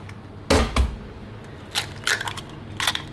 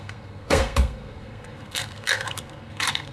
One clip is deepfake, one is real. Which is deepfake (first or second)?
second